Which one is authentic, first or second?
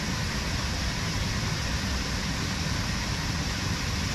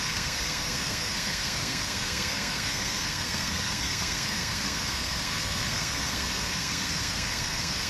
first